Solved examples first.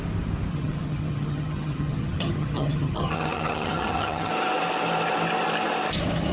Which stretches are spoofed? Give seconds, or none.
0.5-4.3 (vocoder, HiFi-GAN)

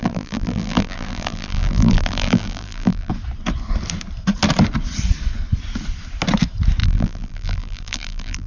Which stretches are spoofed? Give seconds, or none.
0.0-3.1 (vocoder, BigVGAN v2); 6.8-8.5